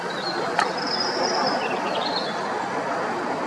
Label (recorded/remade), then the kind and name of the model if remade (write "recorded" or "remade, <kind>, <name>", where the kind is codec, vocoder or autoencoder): recorded